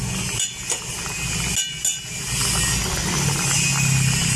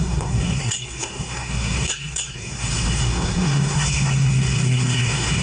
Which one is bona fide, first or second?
first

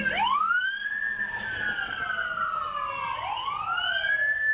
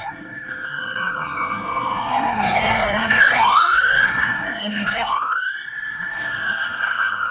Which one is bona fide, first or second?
first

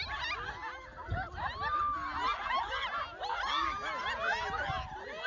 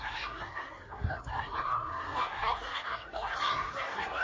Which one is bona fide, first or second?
first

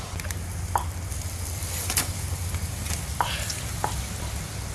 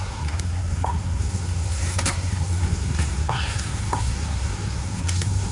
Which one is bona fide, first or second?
first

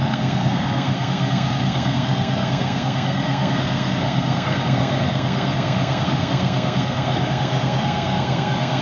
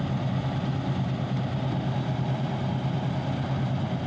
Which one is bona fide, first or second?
second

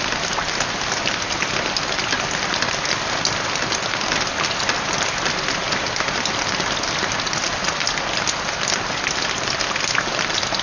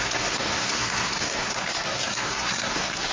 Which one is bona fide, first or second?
first